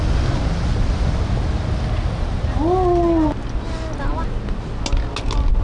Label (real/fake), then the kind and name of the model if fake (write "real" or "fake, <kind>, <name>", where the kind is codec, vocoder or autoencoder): real